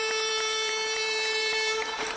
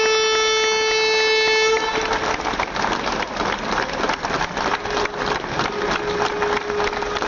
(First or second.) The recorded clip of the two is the second